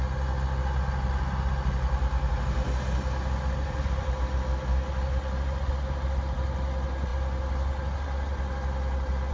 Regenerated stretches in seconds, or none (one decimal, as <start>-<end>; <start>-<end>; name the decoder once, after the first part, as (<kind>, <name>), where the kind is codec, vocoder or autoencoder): none